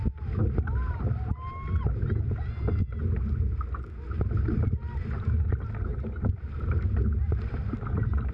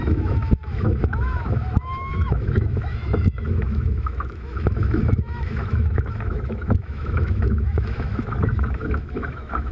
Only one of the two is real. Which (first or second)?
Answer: first